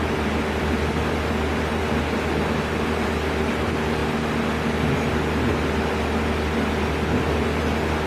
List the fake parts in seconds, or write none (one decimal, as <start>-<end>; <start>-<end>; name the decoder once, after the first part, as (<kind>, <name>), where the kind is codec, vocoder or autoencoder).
none